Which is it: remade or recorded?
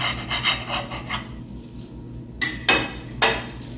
recorded